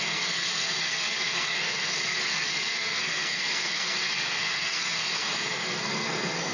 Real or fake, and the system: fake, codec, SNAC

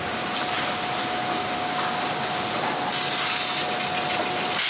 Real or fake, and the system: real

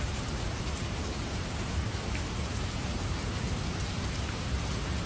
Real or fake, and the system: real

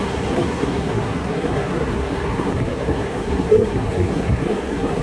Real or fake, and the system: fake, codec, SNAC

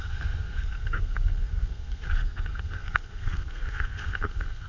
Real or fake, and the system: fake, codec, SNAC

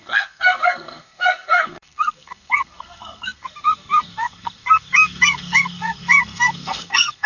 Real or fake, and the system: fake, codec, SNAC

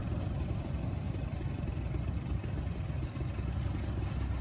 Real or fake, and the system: real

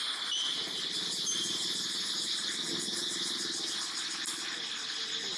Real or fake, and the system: real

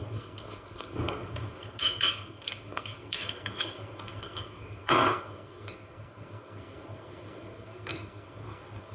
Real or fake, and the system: fake, codec, SNAC